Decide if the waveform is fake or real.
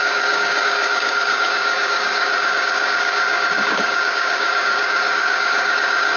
fake